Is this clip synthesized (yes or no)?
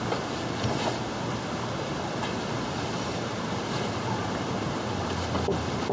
no